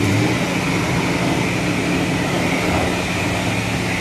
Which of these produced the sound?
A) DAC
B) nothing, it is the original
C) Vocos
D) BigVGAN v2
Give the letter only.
B